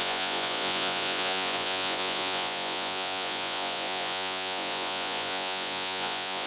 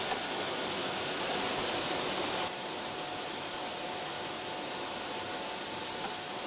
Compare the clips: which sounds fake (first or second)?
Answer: first